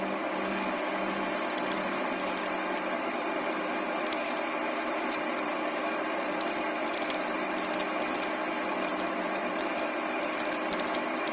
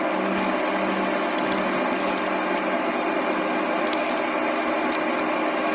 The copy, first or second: first